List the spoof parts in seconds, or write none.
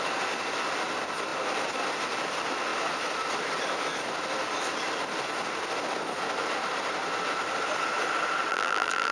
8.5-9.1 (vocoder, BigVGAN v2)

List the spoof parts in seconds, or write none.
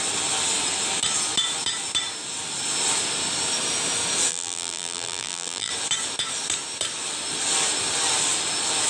4.3-5.7 (vocoder, BigVGAN v2)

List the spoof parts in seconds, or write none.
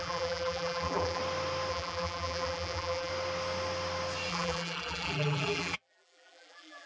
0.0-1.2 (vocoder, BigVGAN v2); 1.7-3.1; 4.3-6.9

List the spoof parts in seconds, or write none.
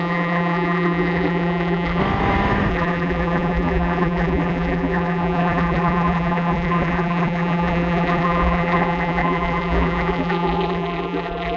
0.0-2.0 (vocoder, BigVGAN v2); 2.7-11.6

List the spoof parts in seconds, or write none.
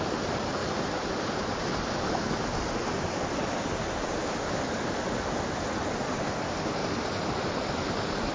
0.0-6.8 (vocoder, BigVGAN v2); 7.5-8.3